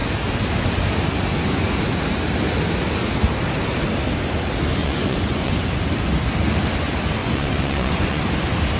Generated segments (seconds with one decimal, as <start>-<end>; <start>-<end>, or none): 4.8-5.5; 7.2-8.2